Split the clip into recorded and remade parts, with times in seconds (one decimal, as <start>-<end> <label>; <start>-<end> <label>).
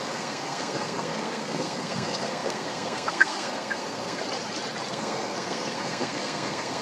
0.0-4.2 remade; 4.2-4.9 recorded; 4.9-6.8 remade